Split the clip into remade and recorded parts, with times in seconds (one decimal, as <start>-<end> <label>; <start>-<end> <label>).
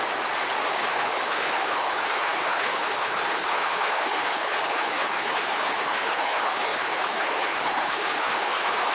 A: 0.0-0.7 recorded; 0.7-8.9 remade